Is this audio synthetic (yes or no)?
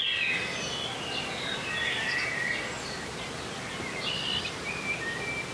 no